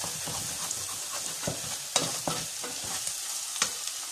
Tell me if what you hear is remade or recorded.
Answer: recorded